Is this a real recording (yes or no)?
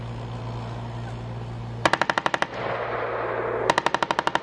yes